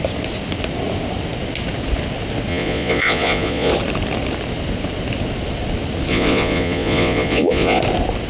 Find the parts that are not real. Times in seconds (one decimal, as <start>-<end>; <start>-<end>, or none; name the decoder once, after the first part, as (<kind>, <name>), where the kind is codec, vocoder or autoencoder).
2.5-3.7 (vocoder, Vocos); 6.1-7.8